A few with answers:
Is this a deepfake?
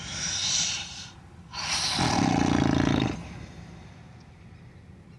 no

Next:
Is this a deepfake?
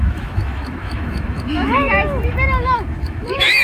yes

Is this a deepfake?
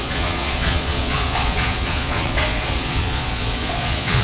yes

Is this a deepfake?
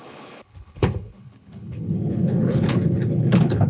yes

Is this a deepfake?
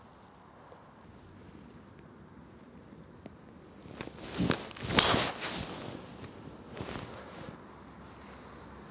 no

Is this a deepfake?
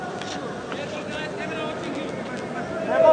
no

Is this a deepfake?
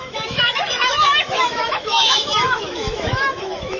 yes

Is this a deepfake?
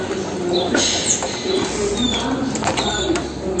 no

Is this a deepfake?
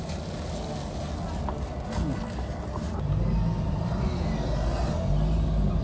no